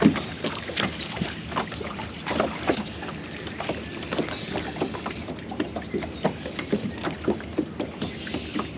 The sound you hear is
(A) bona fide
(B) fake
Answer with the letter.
A